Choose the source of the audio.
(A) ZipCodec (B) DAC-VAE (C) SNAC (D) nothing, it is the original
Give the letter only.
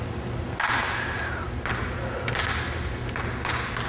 D